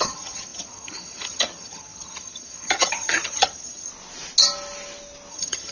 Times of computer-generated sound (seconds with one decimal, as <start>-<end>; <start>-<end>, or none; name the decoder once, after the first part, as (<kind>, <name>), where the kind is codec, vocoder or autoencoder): 0.0-3.9 (vocoder, HiFi-GAN); 5.3-5.7